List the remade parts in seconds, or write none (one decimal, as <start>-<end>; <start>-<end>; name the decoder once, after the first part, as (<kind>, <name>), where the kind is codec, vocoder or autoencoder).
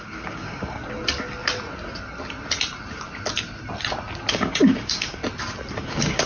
0.0-0.8 (codec, DAC); 4.3-5.2; 5.7-6.3